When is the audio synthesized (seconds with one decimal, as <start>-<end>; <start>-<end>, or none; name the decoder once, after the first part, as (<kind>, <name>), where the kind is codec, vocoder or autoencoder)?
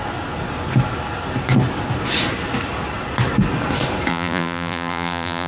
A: 4.1-5.5 (vocoder, BigVGAN v2)